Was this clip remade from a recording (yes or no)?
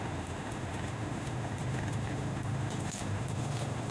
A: yes